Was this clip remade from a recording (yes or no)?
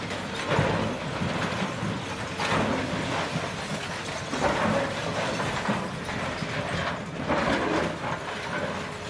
no